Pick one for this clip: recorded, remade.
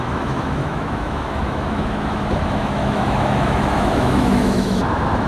remade